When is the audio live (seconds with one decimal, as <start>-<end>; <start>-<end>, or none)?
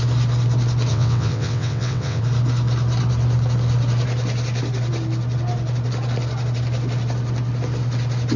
0.0-0.9; 2.2-8.4